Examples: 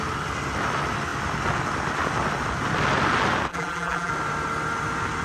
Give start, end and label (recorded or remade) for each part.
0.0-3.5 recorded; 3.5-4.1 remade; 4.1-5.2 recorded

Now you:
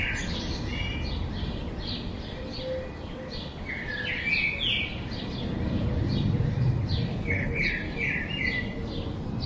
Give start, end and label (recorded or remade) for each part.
0.0-7.1 recorded; 7.1-7.7 remade; 7.7-9.5 recorded

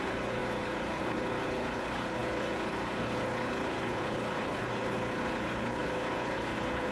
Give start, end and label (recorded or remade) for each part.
0.0-6.9 remade

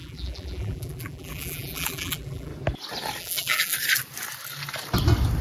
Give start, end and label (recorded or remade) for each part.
0.0-2.5 remade; 2.5-3.2 recorded; 3.2-3.7 remade; 3.7-5.4 recorded